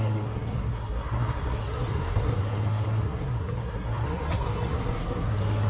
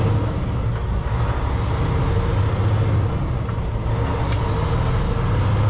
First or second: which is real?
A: second